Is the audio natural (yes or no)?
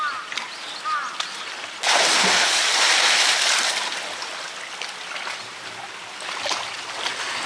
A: yes